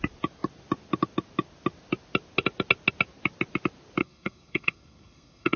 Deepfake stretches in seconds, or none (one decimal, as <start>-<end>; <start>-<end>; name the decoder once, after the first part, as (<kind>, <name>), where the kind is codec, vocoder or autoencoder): 4.0-5.6 (codec, SNAC)